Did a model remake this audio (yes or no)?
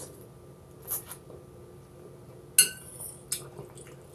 no